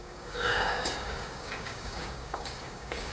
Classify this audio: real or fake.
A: fake